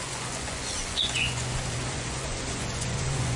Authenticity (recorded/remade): remade